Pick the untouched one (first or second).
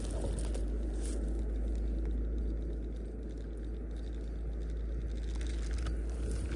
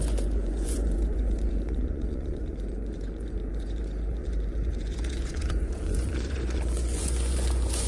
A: first